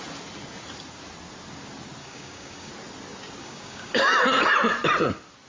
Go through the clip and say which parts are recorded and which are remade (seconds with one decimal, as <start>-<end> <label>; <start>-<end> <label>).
0.0-2.0 recorded; 2.0-2.7 remade; 2.7-3.4 recorded; 3.4-4.0 remade; 4.0-5.5 recorded